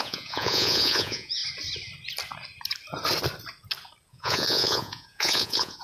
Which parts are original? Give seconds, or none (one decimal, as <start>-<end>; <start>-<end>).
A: 1.4-4.1